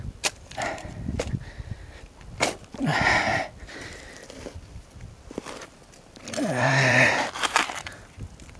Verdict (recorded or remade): remade